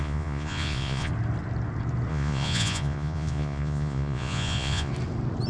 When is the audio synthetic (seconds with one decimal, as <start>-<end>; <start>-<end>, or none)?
0.0-1.1; 2.1-4.9